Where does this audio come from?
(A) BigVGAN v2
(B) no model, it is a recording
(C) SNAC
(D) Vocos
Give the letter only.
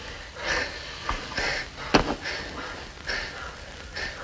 B